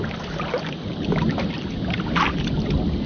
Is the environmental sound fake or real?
real